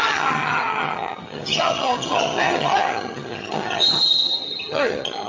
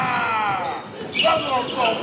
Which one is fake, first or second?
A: first